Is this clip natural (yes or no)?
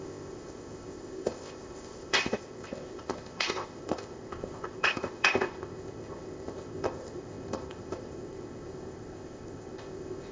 no